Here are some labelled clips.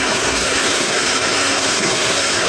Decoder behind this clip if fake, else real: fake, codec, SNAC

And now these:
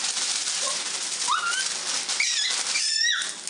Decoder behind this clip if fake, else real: real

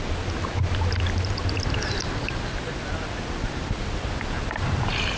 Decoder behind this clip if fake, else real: real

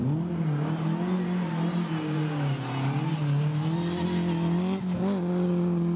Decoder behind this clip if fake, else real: real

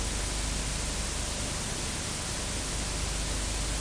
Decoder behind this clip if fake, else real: real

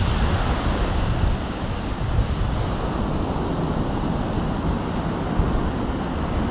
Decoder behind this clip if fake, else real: real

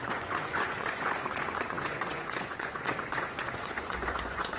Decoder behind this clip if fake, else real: fake, vocoder, Vocos